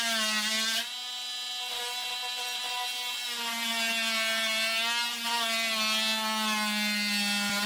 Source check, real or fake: real